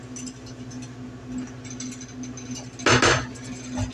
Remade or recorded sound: recorded